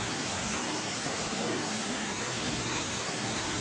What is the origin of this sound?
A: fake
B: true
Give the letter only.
A